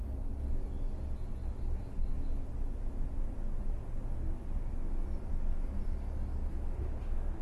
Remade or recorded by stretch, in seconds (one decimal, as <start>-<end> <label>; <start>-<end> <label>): 0.0-6.4 recorded; 6.4-7.0 remade; 7.0-7.4 recorded